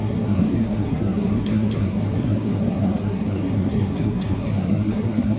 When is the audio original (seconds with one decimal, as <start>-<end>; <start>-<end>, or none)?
none